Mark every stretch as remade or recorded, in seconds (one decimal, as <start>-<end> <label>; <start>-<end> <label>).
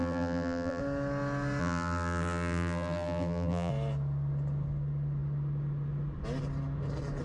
0.0-0.8 remade; 0.8-1.6 recorded; 1.6-3.7 remade; 3.7-7.2 recorded